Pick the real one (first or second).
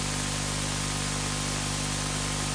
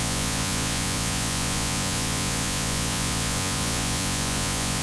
first